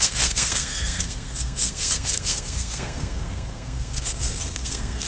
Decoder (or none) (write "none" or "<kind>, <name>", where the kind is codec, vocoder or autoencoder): codec, SNAC